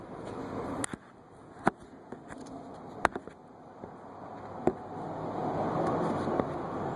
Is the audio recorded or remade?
recorded